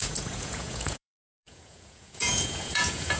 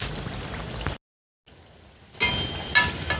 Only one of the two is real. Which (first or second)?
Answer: second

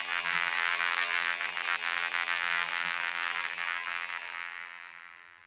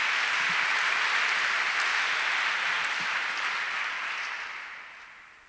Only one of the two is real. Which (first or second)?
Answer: second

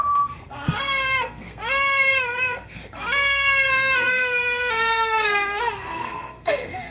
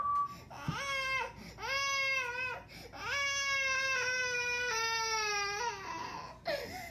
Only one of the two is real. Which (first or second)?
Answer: second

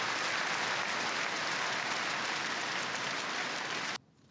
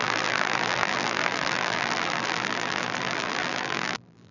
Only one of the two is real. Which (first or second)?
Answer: first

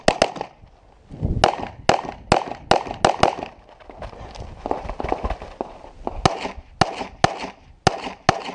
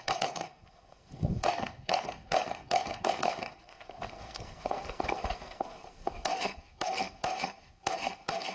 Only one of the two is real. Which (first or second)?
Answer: first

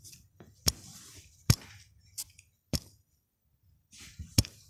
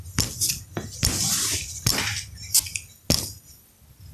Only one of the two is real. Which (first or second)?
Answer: second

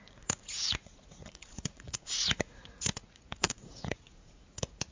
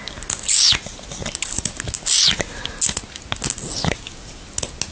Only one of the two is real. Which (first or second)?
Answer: second